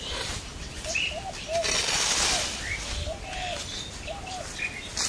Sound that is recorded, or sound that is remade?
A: recorded